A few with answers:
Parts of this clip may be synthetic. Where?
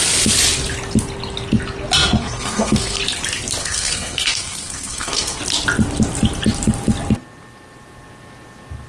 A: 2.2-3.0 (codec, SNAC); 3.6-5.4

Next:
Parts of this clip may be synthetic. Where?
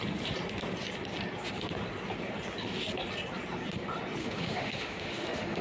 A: 4.2-5.6 (autoencoder, DAC-VAE)